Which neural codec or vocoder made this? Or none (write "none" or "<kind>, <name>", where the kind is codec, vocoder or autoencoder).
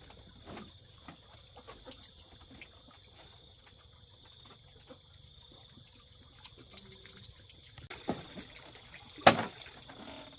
none